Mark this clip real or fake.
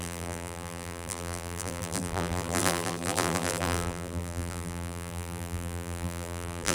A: fake